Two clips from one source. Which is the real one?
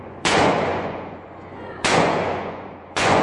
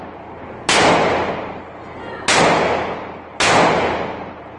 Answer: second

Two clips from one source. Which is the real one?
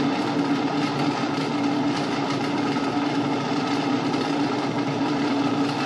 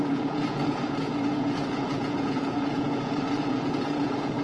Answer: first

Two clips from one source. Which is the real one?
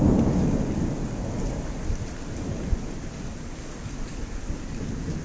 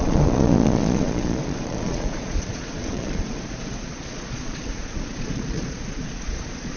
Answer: first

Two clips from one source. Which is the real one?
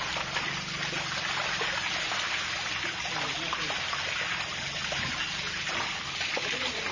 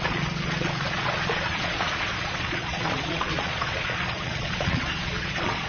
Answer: first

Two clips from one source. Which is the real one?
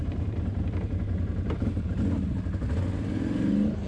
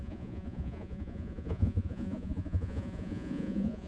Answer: first